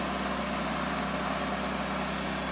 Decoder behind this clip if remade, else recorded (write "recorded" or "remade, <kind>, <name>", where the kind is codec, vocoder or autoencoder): recorded